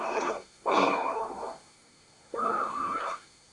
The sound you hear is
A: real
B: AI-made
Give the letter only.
B